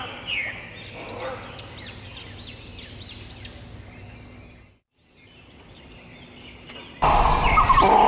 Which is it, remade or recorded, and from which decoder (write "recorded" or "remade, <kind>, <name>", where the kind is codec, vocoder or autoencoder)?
recorded